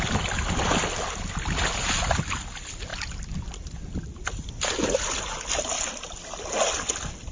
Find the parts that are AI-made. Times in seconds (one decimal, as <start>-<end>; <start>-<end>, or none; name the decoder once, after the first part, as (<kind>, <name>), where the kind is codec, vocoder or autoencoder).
none